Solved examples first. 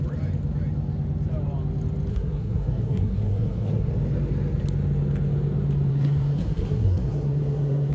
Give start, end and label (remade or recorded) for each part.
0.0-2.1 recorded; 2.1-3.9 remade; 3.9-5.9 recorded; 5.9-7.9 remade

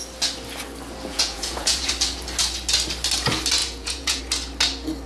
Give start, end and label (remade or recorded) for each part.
0.0-1.1 recorded; 1.1-1.9 remade; 1.9-3.6 recorded; 3.6-4.2 remade; 4.2-5.1 recorded